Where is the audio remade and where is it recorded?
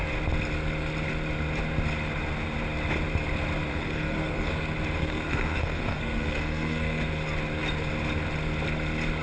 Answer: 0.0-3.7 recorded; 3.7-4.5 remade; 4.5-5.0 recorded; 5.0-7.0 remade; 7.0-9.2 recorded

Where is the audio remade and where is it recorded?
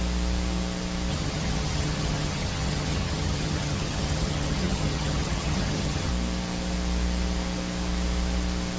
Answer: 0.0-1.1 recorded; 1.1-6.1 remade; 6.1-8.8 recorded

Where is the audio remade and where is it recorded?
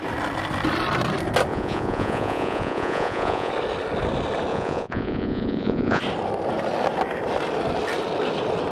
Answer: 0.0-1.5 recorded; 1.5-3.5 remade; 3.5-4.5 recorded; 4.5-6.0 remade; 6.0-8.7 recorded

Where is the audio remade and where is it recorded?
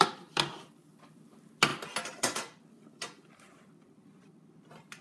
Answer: 0.0-5.0 recorded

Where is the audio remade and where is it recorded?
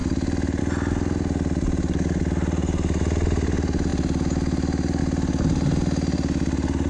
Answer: 0.0-6.9 recorded